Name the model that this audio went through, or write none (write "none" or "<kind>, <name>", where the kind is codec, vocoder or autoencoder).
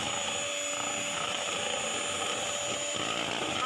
none